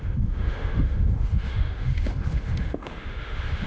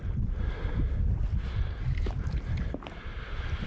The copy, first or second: first